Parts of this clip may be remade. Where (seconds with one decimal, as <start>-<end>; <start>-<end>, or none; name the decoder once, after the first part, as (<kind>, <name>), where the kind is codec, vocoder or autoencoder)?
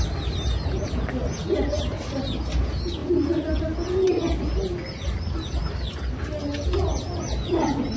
none